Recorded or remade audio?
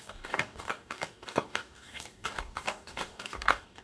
remade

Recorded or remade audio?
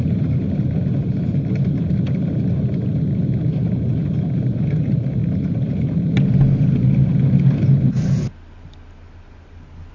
recorded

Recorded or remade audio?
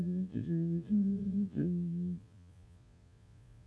remade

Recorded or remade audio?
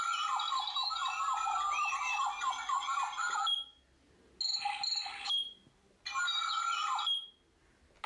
recorded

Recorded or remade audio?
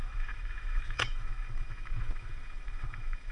remade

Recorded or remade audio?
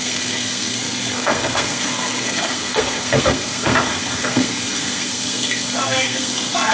remade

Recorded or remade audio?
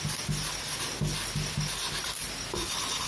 recorded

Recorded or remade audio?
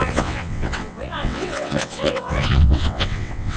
remade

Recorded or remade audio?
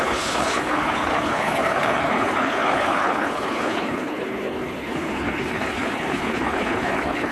remade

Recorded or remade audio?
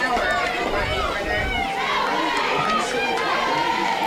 recorded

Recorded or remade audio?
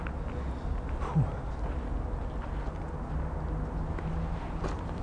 recorded